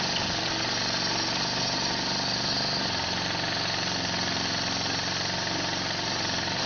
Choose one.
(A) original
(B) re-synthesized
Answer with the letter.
A